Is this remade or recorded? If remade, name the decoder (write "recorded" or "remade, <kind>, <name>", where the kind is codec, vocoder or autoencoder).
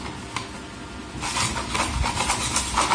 recorded